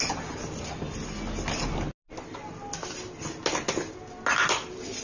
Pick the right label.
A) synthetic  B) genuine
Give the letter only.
B